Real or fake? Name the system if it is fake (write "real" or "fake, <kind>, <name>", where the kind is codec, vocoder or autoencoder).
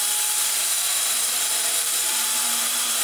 fake, vocoder, BigVGAN v2